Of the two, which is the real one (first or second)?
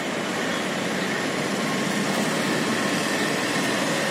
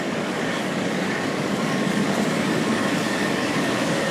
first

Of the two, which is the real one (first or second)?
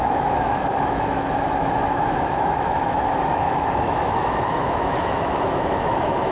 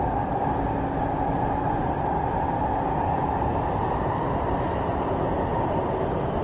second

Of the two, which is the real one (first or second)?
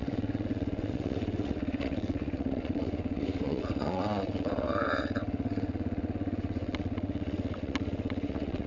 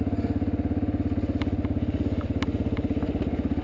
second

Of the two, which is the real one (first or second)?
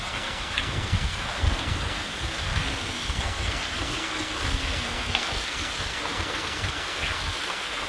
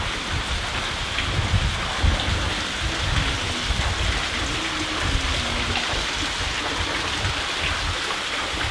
second